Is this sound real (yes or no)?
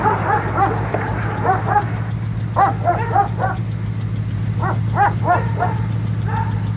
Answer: yes